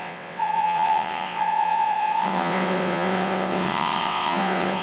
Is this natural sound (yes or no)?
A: no